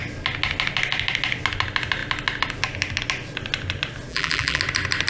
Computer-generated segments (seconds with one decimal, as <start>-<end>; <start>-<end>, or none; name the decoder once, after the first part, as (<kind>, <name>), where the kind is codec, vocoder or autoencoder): 4.1-4.6 (vocoder, BigVGAN v2)